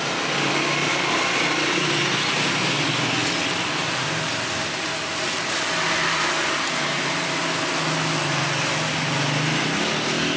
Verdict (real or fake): real